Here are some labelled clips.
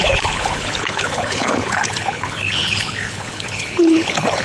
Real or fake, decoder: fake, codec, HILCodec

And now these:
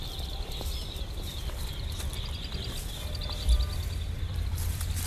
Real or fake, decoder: fake, vocoder, BigVGAN v2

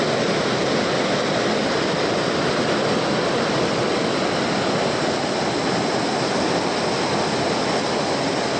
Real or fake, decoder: real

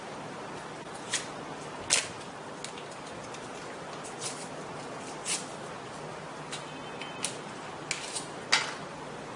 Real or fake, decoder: real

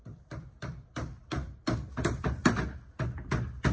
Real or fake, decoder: real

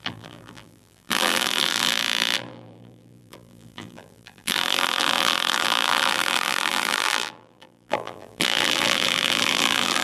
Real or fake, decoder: fake, vocoder, BigVGAN v2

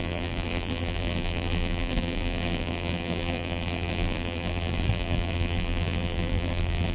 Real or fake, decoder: fake, vocoder, BigVGAN v2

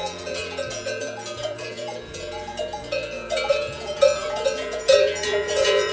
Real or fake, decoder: fake, vocoder, Vocos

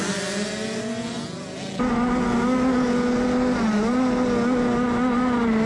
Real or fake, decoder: real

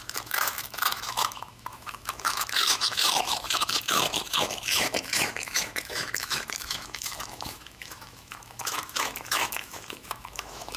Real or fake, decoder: fake, autoencoder, DAC-VAE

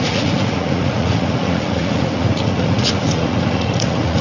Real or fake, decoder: fake, vocoder, Vocos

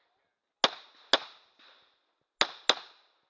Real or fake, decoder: real